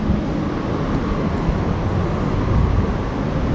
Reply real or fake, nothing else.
real